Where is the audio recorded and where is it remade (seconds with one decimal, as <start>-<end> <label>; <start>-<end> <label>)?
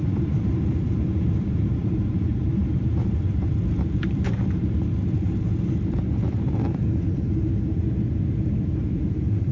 0.0-7.8 remade; 7.8-8.6 recorded; 8.6-9.5 remade